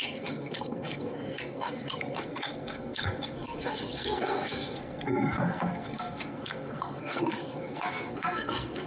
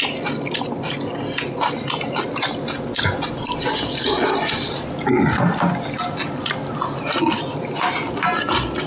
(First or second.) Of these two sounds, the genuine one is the second